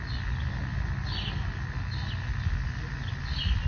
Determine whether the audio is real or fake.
real